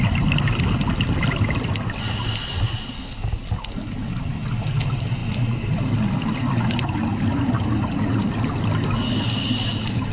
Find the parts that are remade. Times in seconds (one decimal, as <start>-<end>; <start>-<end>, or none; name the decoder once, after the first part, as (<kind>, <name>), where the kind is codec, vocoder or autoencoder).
none